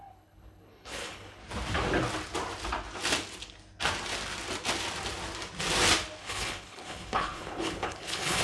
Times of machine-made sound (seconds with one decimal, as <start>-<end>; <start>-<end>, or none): 0.0-1.4; 6.2-8.4